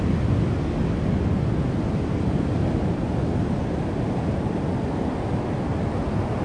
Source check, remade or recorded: recorded